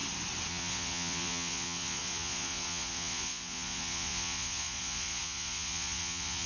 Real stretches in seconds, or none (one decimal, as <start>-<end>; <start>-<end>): 0.0-0.5